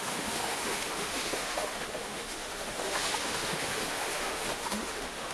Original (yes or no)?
no